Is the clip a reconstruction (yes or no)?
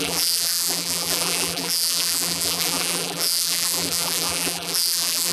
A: yes